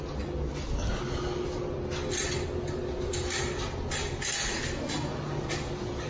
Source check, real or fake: real